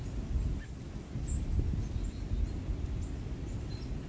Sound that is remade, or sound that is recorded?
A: recorded